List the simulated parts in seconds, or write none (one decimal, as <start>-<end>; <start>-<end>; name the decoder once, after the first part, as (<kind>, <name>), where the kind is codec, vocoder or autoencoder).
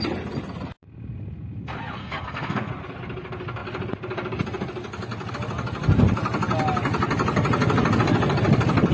2.0-2.7 (codec, SNAC)